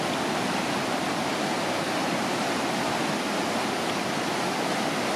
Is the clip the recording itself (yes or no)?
yes